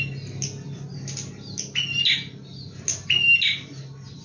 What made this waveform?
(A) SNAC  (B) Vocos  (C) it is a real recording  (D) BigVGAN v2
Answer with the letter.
C